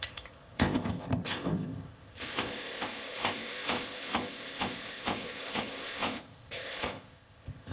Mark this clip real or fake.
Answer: fake